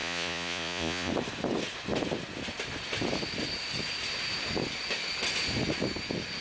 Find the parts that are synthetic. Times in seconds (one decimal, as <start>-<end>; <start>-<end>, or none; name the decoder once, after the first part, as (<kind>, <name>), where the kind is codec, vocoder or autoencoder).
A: 0.0-1.1 (vocoder, Vocos)